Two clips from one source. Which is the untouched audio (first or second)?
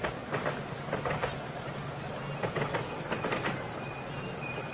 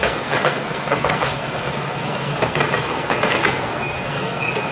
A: first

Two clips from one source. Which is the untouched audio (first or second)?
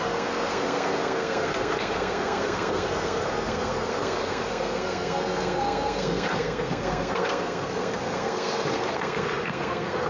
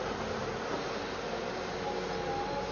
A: second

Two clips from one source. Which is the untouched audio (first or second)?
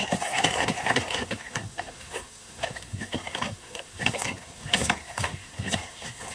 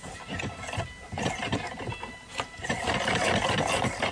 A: second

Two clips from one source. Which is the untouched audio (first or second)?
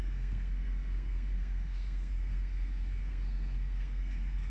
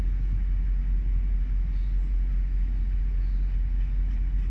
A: second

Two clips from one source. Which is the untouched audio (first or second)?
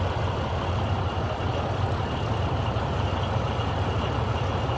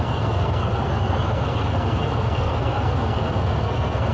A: first